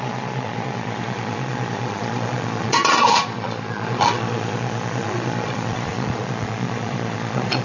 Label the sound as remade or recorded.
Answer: remade